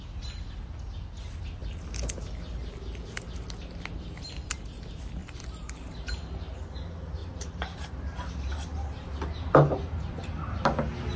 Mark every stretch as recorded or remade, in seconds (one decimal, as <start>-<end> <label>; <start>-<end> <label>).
0.0-5.2 recorded; 5.2-6.2 remade; 6.2-7.2 recorded; 7.2-8.5 remade; 8.5-11.2 recorded